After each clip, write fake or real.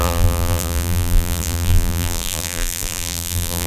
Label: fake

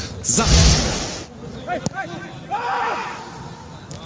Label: real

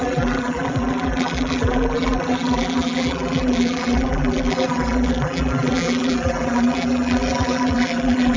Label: fake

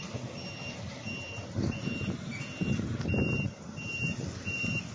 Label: real